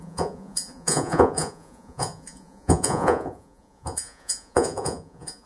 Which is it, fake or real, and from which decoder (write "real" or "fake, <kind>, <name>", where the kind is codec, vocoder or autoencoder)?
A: fake, vocoder, Vocos